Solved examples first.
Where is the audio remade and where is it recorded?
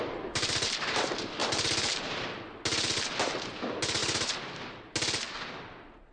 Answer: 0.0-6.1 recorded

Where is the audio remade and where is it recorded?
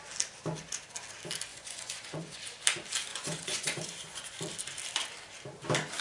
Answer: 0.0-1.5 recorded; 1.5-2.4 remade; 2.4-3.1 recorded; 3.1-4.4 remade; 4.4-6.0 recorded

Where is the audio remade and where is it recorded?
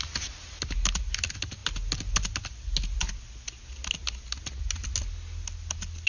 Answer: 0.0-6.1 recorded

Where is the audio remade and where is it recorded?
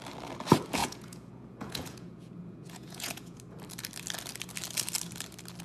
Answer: 0.0-0.8 recorded; 0.8-3.4 remade; 3.4-5.6 recorded